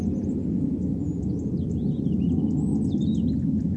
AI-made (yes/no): no